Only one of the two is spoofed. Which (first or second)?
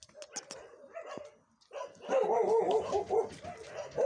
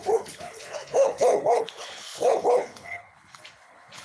second